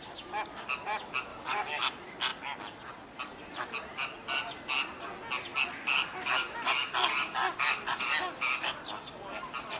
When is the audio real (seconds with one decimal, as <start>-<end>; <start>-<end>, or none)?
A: 0.0-1.3; 1.8-9.8